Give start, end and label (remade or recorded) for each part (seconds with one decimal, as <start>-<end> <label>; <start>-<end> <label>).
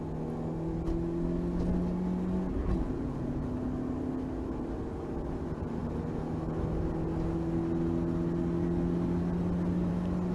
0.0-2.6 recorded; 2.6-3.5 remade; 3.5-10.3 recorded